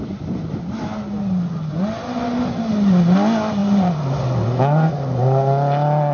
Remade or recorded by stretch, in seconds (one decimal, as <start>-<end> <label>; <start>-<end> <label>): 0.0-6.1 recorded